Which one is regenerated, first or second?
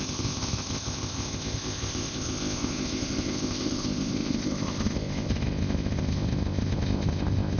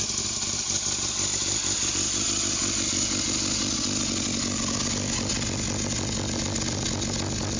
first